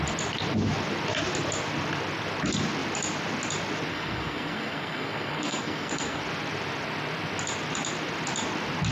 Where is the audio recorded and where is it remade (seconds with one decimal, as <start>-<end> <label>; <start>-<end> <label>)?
0.0-3.9 recorded; 3.9-6.2 remade; 6.2-8.9 recorded